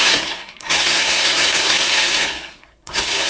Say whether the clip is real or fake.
fake